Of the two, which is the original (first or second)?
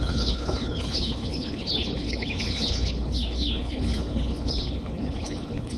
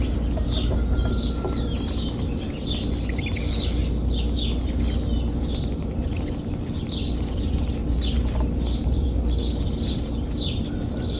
second